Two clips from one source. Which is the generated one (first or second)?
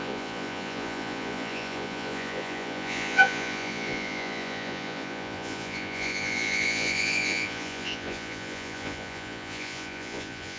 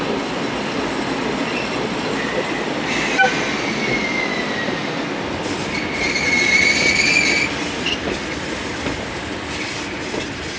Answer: first